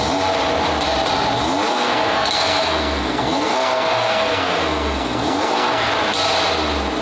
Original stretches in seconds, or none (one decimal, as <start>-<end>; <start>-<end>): 0.0-1.7; 5.9-7.0